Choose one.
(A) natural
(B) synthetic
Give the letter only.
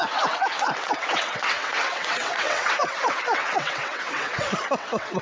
B